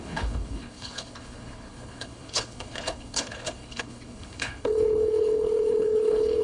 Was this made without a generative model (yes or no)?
no